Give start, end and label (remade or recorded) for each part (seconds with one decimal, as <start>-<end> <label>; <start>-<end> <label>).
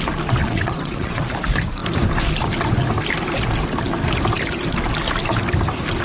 0.0-0.4 recorded; 0.4-1.2 remade; 1.2-6.0 recorded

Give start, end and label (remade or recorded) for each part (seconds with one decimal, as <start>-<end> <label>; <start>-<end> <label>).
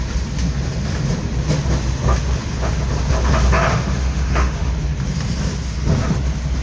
0.0-3.7 recorded; 3.7-4.7 remade; 4.7-6.6 recorded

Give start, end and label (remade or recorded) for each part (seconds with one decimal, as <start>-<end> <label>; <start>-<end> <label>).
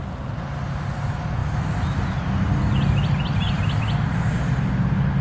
0.0-5.2 recorded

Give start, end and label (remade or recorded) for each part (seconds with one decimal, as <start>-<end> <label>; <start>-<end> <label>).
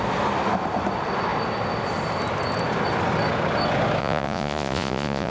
0.0-4.0 recorded; 4.0-5.3 remade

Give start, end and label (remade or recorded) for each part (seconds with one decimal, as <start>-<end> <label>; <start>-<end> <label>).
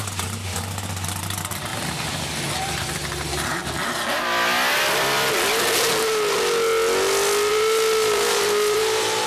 0.0-3.6 remade; 3.6-7.5 recorded; 7.5-9.3 remade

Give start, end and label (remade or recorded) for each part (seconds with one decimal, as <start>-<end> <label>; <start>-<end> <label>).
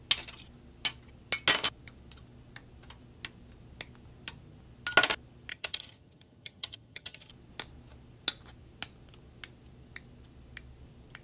0.0-5.5 recorded; 5.5-7.3 remade; 7.3-11.2 recorded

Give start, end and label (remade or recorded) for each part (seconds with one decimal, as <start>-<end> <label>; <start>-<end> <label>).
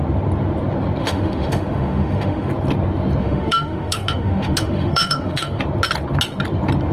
0.0-1.0 recorded; 1.0-2.5 remade; 2.5-3.2 recorded; 3.2-5.6 remade; 5.6-6.9 recorded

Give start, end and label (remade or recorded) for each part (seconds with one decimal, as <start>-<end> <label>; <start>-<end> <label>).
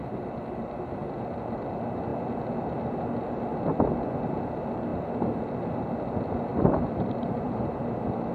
0.0-1.7 remade; 1.7-6.5 recorded; 6.5-7.6 remade; 7.6-8.3 recorded